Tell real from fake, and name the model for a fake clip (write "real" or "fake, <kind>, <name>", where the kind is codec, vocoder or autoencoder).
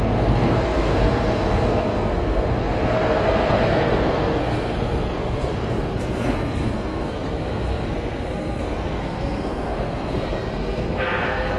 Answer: fake, codec, SNAC